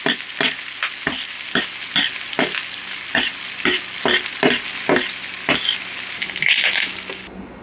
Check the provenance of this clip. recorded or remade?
recorded